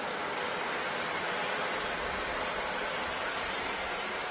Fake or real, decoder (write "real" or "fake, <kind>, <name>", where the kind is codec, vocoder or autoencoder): real